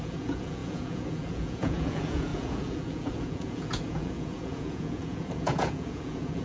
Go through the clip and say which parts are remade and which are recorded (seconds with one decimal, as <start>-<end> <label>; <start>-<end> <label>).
0.0-6.4 remade